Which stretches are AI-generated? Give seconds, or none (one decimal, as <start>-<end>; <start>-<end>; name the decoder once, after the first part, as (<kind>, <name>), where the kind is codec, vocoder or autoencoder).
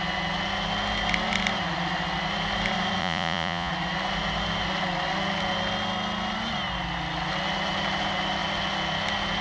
3.0-3.7 (vocoder, Vocos)